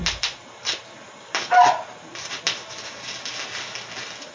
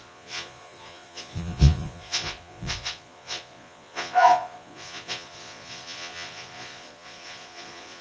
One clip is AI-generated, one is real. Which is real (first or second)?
first